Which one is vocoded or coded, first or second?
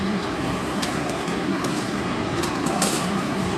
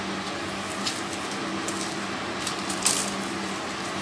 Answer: first